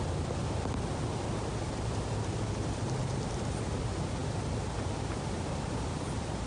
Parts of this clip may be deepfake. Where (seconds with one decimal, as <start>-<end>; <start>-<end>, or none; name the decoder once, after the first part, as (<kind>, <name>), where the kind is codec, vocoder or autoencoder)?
none